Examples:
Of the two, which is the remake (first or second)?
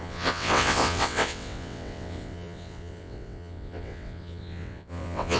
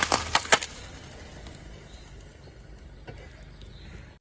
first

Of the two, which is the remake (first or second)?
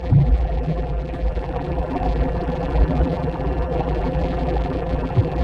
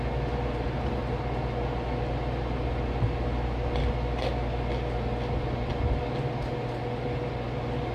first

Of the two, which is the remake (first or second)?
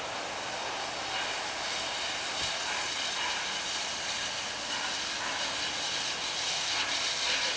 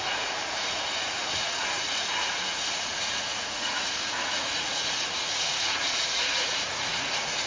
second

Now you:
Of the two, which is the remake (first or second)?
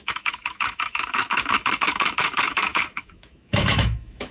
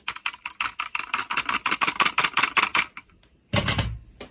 first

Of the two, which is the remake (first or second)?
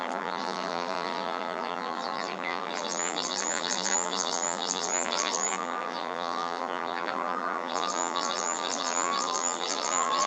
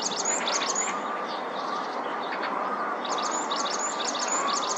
first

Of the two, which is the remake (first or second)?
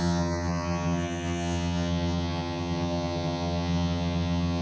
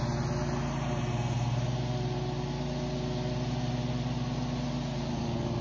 first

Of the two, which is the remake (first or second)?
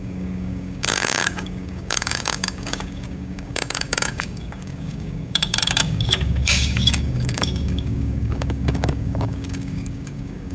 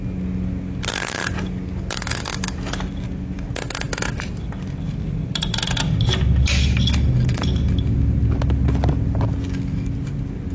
first